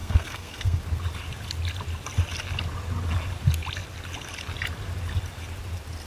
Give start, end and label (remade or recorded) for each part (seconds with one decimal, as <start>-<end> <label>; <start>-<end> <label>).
0.0-0.8 remade; 0.8-6.1 recorded